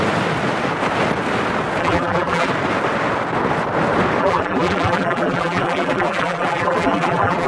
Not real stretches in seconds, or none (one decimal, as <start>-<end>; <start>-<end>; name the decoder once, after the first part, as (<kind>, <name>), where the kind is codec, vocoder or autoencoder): 1.8-2.5 (vocoder, BigVGAN v2); 4.2-7.5